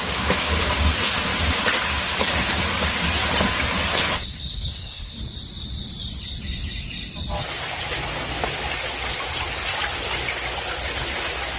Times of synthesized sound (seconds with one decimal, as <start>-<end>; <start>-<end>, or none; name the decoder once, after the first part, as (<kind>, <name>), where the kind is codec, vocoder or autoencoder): 3.9-5.2 (codec, HILCodec)